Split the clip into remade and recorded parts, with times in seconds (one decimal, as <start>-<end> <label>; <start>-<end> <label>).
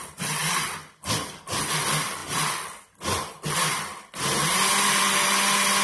0.0-5.8 recorded